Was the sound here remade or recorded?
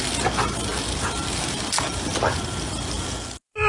recorded